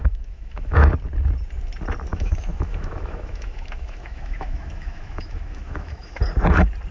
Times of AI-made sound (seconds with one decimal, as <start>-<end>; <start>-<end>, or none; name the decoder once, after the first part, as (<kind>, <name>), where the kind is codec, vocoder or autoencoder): 0.0-0.9 (autoencoder, DAC-VAE); 2.1-6.2

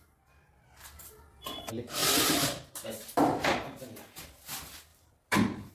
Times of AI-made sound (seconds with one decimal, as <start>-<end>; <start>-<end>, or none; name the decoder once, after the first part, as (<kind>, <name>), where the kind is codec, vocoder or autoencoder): 2.0-3.8 (vocoder, BigVGAN v2); 4.9-5.7

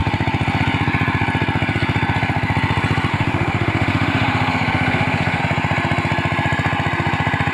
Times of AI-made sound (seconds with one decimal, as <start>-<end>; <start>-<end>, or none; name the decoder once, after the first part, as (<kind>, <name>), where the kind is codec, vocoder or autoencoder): 3.1-5.4 (autoencoder, DAC-VAE)

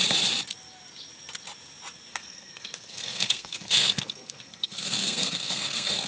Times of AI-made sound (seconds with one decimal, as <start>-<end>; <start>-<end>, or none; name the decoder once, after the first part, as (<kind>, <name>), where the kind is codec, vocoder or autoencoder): 2.1-6.1 (codec, SNAC)

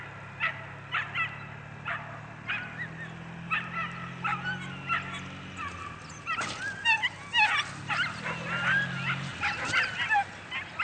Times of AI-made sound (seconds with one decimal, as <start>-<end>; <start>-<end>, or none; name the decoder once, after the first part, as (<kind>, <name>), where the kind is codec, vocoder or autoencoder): none

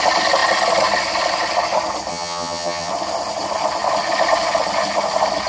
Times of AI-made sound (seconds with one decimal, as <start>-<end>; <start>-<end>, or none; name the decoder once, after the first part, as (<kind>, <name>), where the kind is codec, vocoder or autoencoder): 2.1-2.9 (vocoder, HiFi-GAN)

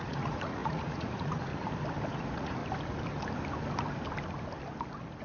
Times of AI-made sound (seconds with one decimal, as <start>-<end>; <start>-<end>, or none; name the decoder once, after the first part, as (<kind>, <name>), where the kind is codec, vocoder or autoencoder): 0.0-1.5 (vocoder, Vocos); 2.1-2.6

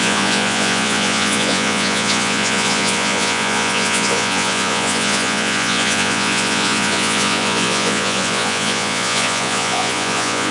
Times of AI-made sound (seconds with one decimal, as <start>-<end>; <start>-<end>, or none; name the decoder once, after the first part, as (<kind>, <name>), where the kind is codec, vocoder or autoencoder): 0.0-10.5 (vocoder, Vocos)